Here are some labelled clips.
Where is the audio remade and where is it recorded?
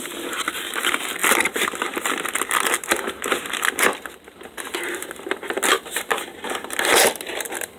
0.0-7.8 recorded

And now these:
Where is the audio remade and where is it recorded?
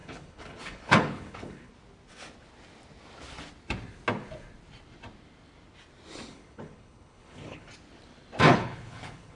0.0-1.7 remade; 1.7-6.3 recorded; 6.3-7.7 remade; 7.7-8.5 recorded; 8.5-9.4 remade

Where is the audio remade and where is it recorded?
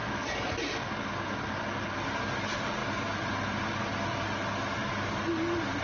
0.0-5.8 recorded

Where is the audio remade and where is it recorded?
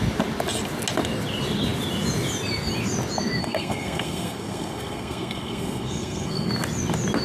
0.0-3.4 recorded; 3.4-6.5 remade; 6.5-7.2 recorded